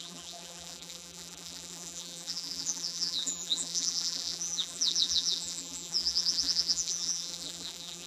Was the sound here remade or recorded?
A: remade